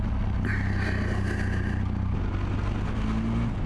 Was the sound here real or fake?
real